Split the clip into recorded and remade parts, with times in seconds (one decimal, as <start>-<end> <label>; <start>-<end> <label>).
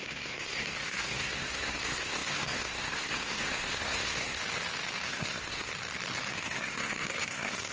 0.0-4.4 remade; 4.4-5.1 recorded; 5.1-5.7 remade; 5.7-6.3 recorded; 6.3-7.7 remade